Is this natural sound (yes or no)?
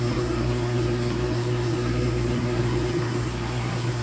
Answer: no